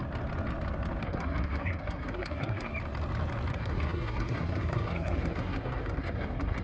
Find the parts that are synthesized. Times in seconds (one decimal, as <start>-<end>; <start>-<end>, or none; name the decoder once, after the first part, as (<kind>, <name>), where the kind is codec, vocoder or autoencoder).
1.0-2.7 (codec, SNAC); 3.5-6.6

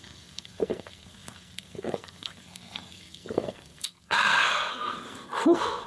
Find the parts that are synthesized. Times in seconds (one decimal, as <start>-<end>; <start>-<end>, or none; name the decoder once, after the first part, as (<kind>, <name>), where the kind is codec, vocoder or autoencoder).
0.0-5.9 (codec, SNAC)